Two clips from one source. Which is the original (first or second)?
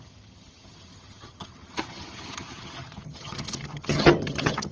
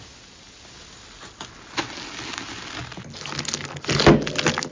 second